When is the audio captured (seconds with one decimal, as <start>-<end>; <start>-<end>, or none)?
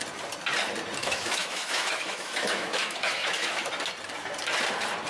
0.0-1.0; 3.7-5.1